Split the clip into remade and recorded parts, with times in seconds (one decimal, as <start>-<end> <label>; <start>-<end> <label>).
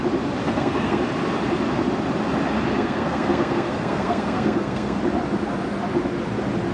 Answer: 0.0-0.4 recorded; 0.4-1.0 remade; 1.0-2.7 recorded; 2.7-5.0 remade; 5.0-6.7 recorded